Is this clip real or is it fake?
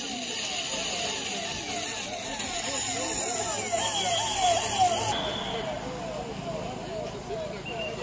real